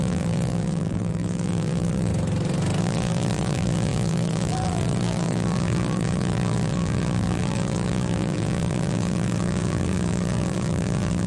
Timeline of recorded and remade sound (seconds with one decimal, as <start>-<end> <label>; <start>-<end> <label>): 0.0-2.1 remade; 2.1-2.8 recorded; 2.8-11.3 remade